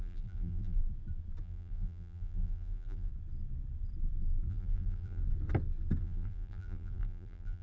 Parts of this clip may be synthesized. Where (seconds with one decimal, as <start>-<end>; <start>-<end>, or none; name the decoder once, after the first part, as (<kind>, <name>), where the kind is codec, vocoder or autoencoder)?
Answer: 0.0-0.8 (vocoder, BigVGAN v2); 1.4-3.1; 4.5-5.2; 6.0-7.6